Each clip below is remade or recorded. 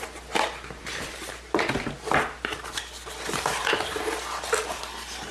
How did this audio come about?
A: recorded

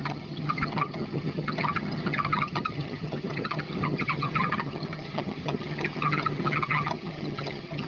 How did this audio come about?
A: remade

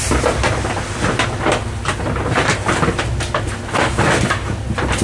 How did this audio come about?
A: recorded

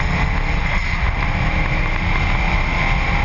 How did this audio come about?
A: recorded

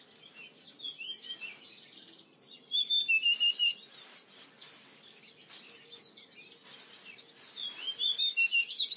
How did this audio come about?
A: recorded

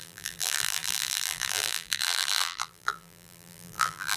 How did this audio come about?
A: remade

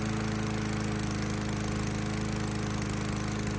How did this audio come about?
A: recorded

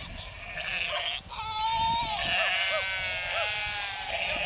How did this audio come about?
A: recorded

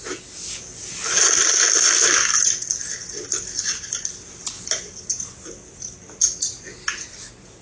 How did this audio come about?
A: recorded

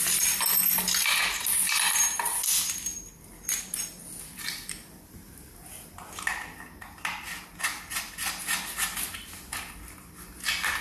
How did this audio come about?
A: recorded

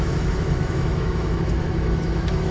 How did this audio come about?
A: remade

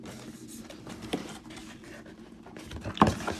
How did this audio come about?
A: recorded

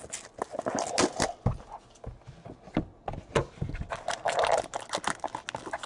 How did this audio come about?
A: recorded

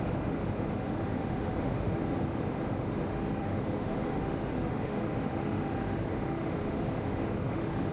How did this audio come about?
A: remade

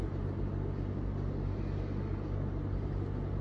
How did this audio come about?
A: recorded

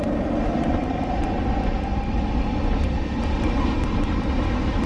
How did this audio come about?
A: recorded